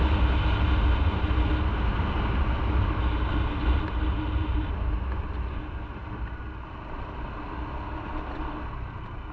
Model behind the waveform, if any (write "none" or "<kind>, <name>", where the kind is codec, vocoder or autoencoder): none